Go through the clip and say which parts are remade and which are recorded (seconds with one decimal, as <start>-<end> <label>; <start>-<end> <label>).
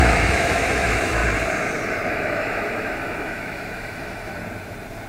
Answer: 0.0-1.2 remade; 1.2-2.1 recorded; 2.1-4.3 remade; 4.3-5.1 recorded